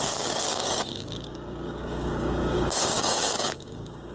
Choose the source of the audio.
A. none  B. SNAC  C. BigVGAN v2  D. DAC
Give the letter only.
D